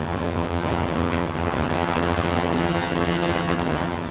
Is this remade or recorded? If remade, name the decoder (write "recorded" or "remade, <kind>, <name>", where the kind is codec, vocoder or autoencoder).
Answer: remade, vocoder, HiFi-GAN